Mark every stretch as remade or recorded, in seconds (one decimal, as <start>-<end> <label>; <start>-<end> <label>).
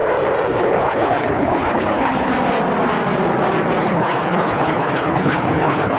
0.0-0.6 recorded; 0.6-2.3 remade; 2.3-3.8 recorded; 3.8-6.0 remade